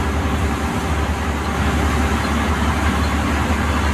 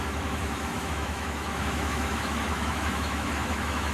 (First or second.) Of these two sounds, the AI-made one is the second